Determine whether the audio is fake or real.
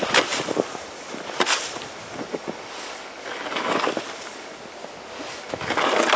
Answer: real